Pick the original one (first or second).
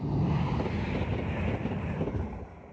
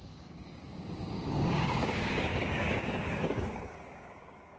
first